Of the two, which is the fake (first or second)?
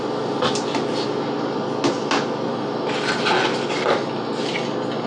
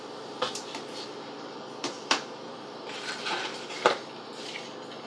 second